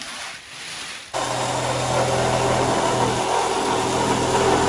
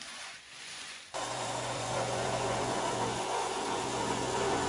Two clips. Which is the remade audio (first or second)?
second